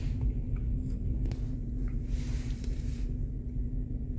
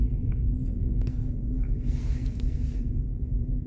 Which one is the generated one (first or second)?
second